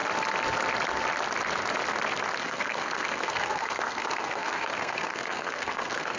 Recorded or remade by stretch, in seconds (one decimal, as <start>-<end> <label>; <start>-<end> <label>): 0.0-2.4 recorded; 2.4-6.2 remade